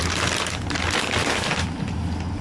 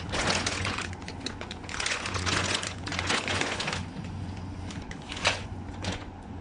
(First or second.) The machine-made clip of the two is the second